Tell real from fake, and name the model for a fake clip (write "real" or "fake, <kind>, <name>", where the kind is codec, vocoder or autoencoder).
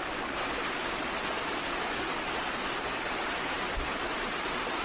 real